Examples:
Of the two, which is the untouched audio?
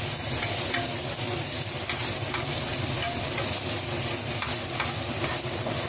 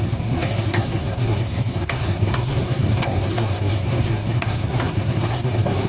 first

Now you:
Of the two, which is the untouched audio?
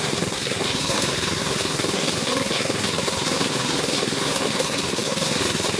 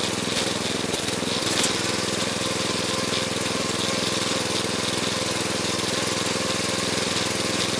second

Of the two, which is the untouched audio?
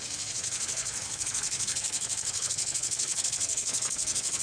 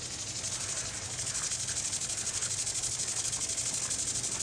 second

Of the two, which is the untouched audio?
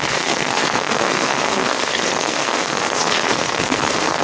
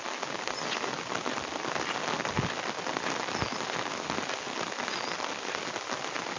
second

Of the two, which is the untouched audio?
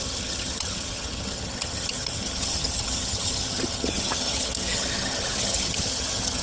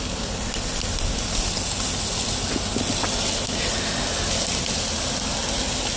second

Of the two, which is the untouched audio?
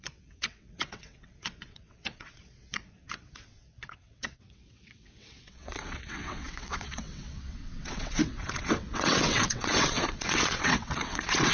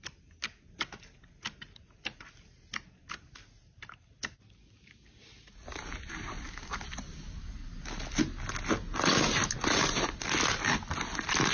second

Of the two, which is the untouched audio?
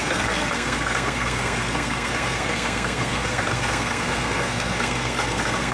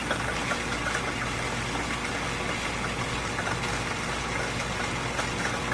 second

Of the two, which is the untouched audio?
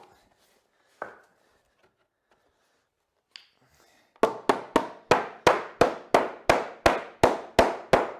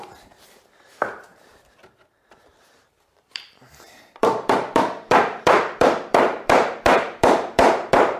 first